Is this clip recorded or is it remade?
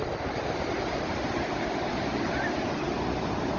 recorded